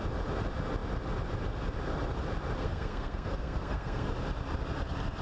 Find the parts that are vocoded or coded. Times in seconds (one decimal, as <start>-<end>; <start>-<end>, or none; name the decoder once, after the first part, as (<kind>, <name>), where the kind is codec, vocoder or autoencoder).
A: 2.6-4.1 (codec, SNAC)